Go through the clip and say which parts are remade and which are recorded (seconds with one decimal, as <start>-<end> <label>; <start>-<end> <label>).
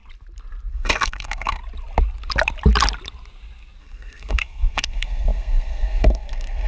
0.0-0.7 recorded; 0.7-1.6 remade; 1.6-3.8 recorded; 3.8-6.7 remade